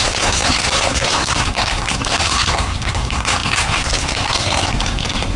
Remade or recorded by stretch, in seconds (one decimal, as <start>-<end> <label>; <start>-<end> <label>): 0.0-5.4 remade